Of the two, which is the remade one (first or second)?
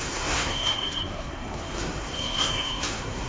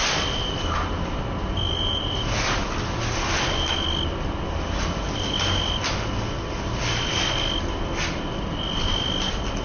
first